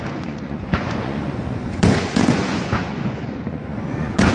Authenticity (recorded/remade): remade